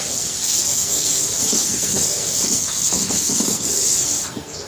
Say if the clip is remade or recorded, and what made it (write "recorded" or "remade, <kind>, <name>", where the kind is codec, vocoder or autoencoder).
remade, codec, SNAC